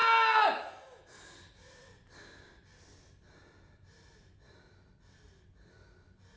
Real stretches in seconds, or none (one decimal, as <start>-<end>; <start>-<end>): 0.6-6.4